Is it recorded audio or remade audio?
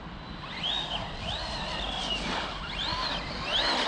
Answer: recorded